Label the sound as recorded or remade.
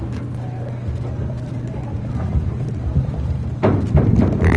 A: remade